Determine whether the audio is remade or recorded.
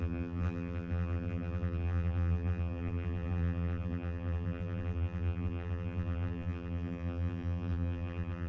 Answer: remade